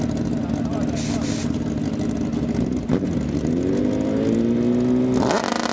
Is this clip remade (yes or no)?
no